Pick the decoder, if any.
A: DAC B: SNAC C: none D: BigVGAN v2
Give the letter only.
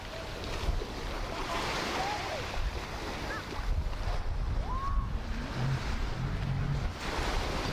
C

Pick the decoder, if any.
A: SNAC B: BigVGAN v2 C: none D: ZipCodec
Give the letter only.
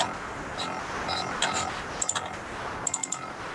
C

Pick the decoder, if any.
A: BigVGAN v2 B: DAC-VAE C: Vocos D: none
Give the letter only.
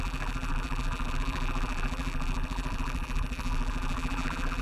A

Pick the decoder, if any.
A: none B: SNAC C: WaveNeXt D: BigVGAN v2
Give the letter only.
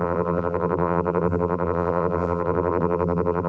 D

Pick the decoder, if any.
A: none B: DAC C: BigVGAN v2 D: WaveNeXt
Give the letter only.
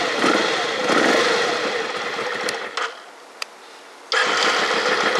A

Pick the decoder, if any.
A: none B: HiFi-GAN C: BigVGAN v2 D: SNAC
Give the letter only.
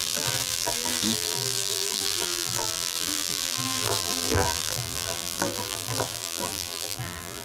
C